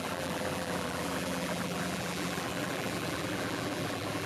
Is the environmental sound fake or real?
fake